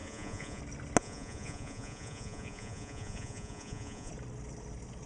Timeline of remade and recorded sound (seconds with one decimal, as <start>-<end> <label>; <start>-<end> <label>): 0.0-0.6 remade; 0.6-1.0 recorded; 1.0-4.1 remade; 4.1-5.1 recorded

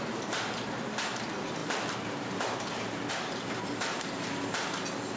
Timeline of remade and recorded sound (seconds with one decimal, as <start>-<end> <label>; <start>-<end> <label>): 0.0-5.2 remade

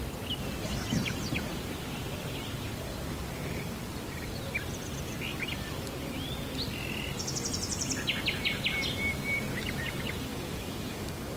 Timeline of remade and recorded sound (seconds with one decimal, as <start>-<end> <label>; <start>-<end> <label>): 0.0-10.3 recorded; 10.3-11.4 remade

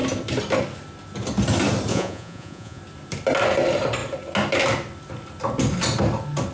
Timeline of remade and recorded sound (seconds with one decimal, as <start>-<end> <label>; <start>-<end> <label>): 0.0-1.9 recorded; 1.9-2.8 remade; 2.8-6.5 recorded

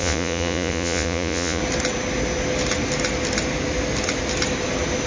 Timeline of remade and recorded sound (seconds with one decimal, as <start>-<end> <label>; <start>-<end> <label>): 0.0-1.6 remade; 1.6-5.1 recorded

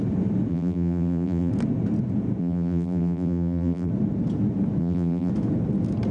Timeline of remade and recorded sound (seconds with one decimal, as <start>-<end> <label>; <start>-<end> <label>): 0.0-0.5 recorded; 0.5-1.5 remade; 1.5-2.4 recorded; 2.4-3.9 remade; 3.9-4.8 recorded; 4.8-5.3 remade; 5.3-6.1 recorded

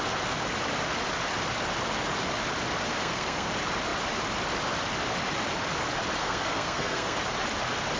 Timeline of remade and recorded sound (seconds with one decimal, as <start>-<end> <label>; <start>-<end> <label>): 0.0-2.9 recorded; 2.9-3.5 remade; 3.5-6.2 recorded; 6.2-7.2 remade; 7.2-8.0 recorded

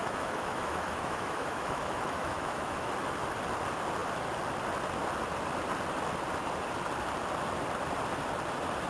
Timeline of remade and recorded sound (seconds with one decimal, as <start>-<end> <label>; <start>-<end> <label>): 0.0-2.9 remade; 2.9-8.9 recorded